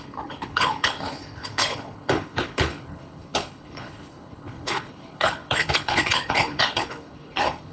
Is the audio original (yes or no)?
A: no